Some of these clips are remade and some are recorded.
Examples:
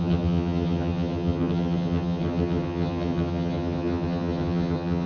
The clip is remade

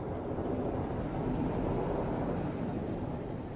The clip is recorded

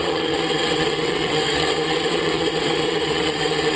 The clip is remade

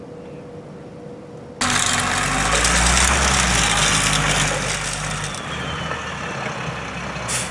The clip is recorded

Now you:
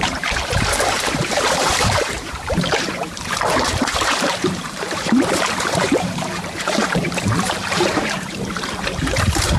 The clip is remade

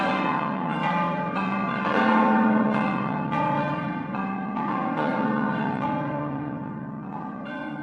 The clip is remade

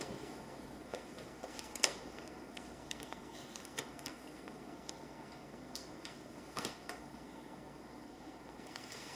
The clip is remade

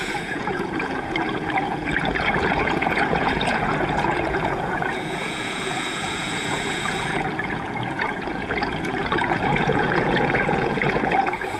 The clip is remade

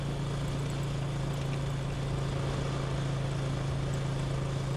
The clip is recorded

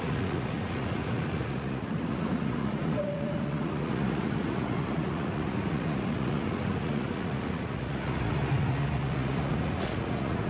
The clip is remade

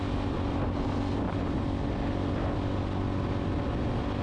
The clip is recorded